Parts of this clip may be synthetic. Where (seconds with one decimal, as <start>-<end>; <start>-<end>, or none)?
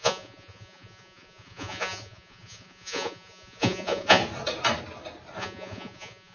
0.0-4.2; 5.4-6.3